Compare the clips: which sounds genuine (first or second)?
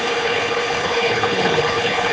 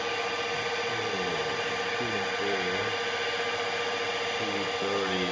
second